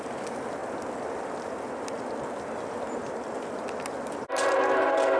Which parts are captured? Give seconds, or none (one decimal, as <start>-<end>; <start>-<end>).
0.0-5.2